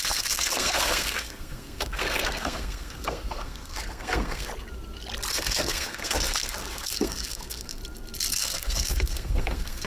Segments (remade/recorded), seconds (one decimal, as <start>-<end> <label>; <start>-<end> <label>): 0.0-4.5 remade; 4.5-5.3 recorded; 5.3-7.8 remade; 7.8-8.3 recorded; 8.3-9.9 remade